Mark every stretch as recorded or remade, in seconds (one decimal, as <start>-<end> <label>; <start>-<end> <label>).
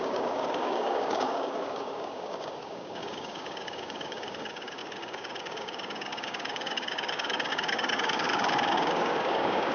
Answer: 0.0-9.7 remade